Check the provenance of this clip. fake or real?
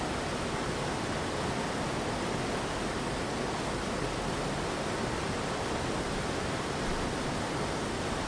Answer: real